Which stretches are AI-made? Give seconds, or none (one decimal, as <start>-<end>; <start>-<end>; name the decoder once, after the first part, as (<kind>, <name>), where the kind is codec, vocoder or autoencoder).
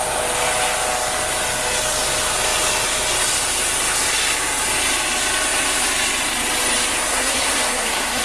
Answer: 7.1-8.2 (codec, SNAC)